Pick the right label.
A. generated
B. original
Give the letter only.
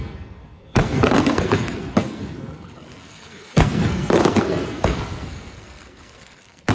A